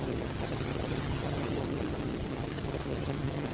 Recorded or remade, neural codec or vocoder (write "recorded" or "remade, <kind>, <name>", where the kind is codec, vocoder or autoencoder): remade, vocoder, HiFi-GAN